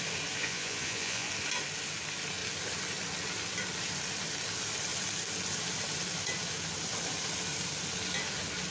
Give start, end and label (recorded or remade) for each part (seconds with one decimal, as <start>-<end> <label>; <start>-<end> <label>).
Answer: 0.0-0.4 recorded; 0.4-1.3 remade; 1.3-8.7 recorded